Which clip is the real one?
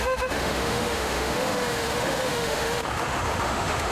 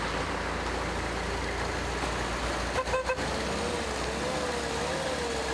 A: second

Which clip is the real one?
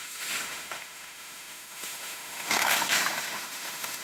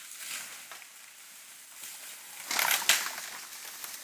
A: second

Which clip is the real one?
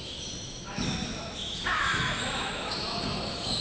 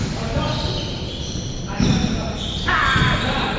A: second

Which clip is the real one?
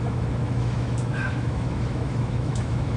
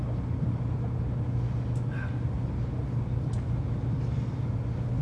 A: second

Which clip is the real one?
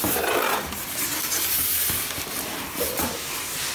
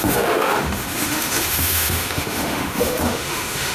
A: first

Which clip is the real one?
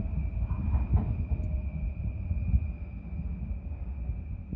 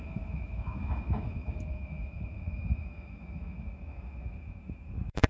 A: first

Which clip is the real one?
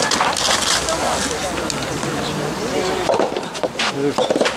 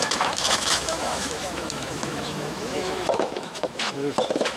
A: first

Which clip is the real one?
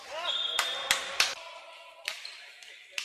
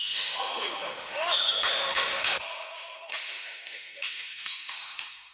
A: first